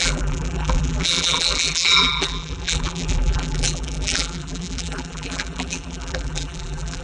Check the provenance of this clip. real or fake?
fake